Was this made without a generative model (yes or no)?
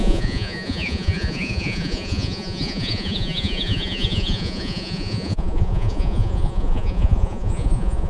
no